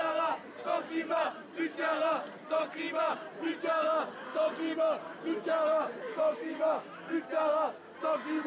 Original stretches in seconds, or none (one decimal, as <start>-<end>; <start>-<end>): 0.0-8.5